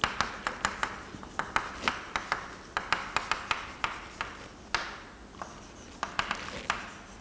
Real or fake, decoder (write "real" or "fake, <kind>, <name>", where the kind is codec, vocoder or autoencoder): real